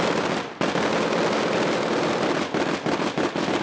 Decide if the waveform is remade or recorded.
recorded